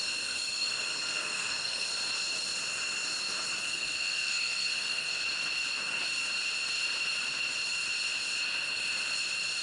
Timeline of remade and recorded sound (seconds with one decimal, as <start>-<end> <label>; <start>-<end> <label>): 0.0-1.9 remade; 1.9-3.6 recorded; 3.6-5.2 remade; 5.2-9.6 recorded